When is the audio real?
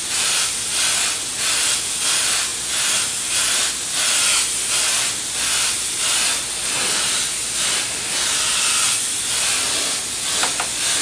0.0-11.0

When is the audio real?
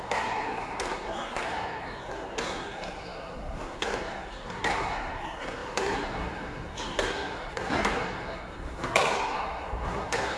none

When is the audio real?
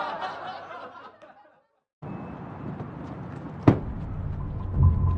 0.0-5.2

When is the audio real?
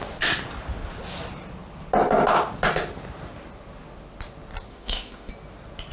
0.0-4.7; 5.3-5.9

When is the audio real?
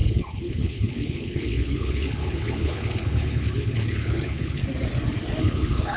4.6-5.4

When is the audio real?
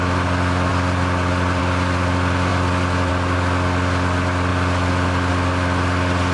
0.0-6.3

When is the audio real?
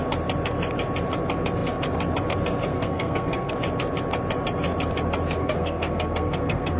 0.0-2.7; 3.5-5.4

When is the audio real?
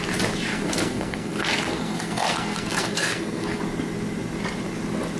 0.0-0.5; 3.6-5.2